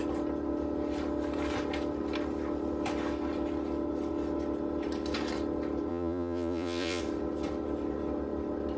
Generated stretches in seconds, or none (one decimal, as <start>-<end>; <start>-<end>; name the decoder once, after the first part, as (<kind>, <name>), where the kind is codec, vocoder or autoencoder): 5.9-7.0 (vocoder, Vocos)